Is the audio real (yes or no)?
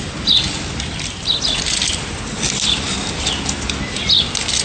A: yes